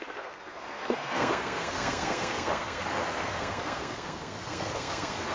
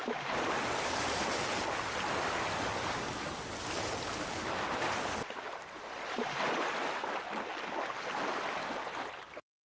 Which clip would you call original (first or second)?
second